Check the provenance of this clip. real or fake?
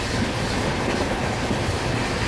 real